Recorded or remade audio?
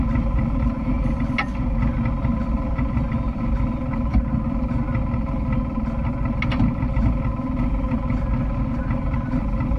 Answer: recorded